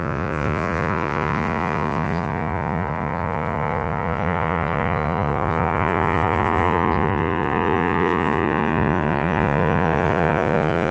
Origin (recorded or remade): remade